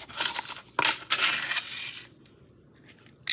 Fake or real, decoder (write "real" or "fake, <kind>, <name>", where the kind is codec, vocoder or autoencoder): real